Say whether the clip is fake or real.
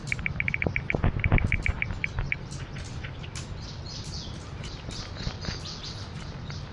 real